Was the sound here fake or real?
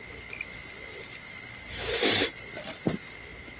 real